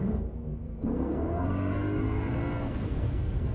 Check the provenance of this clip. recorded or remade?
remade